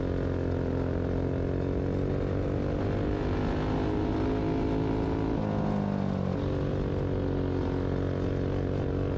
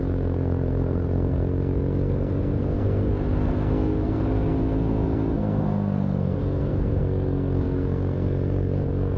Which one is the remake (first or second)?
second